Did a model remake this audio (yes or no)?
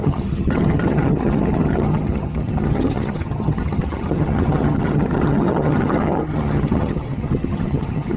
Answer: yes